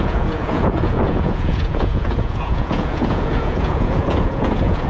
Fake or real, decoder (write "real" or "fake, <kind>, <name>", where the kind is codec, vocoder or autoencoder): fake, vocoder, Vocos